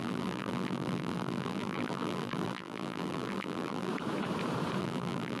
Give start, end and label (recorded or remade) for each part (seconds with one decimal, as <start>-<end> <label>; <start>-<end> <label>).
0.0-3.9 remade; 3.9-4.8 recorded; 4.8-5.4 remade